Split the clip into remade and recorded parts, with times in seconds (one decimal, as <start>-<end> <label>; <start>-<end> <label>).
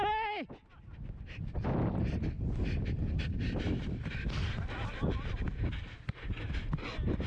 0.0-7.3 recorded